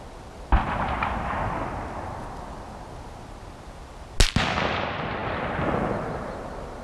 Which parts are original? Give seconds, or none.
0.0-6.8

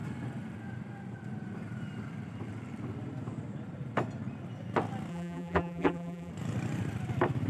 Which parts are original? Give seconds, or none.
0.0-5.1; 6.3-7.5

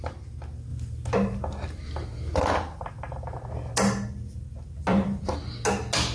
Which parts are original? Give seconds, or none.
0.0-4.9; 5.5-6.1

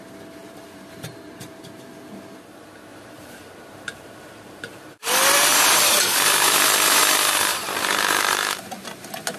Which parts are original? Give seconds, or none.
0.0-0.4; 1.9-2.9; 5.1-5.5; 7.0-7.5; 8.3-9.4

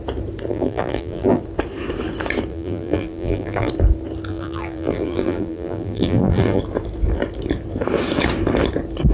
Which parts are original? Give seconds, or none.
0.0-0.5; 1.4-2.5; 3.7-4.3; 6.6-9.1

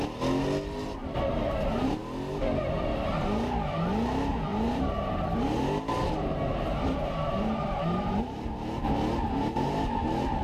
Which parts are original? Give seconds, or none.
0.0-1.0; 2.0-4.5; 5.4-6.7

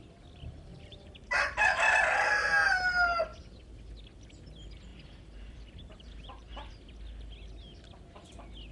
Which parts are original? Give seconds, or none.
0.0-0.7; 2.0-4.9; 6.7-8.7